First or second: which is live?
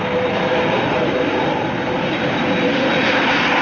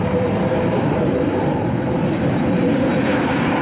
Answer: first